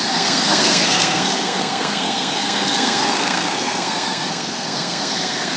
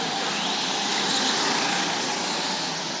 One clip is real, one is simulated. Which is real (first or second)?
second